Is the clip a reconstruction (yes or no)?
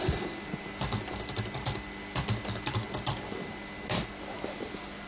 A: no